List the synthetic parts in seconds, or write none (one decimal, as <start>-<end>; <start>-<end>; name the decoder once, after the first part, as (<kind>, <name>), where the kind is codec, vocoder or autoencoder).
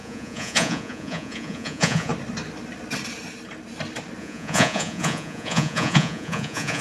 0.0-2.1 (vocoder, Vocos); 4.2-6.8